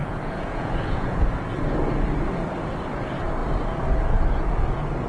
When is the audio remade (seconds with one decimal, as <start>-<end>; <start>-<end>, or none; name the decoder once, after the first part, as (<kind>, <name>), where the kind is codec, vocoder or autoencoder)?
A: 0.0-1.3 (vocoder, Vocos)

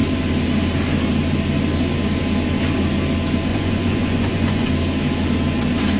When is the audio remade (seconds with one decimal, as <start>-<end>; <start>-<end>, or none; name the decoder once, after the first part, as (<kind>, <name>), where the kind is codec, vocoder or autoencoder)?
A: 3.5-4.7 (vocoder, Vocos)

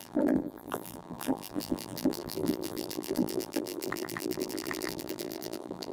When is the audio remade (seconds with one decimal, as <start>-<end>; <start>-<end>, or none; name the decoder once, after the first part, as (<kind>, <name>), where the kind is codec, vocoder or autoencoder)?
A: 0.0-5.9 (vocoder, BigVGAN v2)

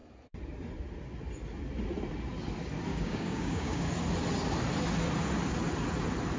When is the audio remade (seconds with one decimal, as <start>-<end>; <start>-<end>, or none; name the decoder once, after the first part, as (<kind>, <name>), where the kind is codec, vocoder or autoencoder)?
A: 2.9-3.9 (codec, DAC)